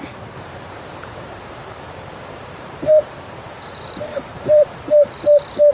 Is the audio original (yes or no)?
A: no